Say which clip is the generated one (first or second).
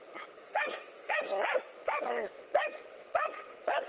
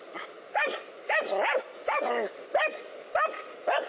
first